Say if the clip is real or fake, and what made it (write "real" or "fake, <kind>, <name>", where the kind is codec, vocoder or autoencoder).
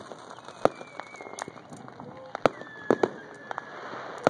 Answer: real